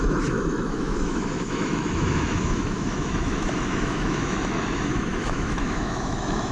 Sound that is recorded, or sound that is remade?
remade